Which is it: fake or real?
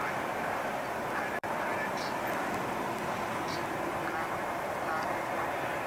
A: fake